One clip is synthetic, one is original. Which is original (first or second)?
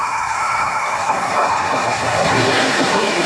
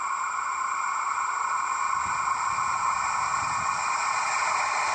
second